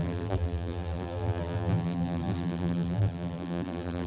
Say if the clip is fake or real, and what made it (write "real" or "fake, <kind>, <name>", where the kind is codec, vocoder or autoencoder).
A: fake, vocoder, BigVGAN v2